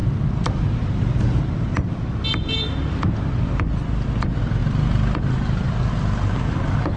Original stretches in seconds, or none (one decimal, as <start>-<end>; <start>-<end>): 0.0-7.0